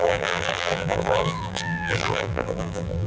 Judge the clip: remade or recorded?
remade